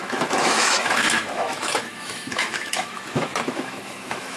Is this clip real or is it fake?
fake